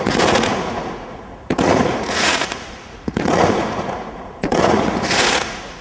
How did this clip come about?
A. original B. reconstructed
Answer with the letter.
B